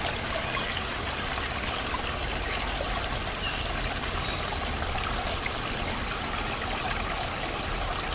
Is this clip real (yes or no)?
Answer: yes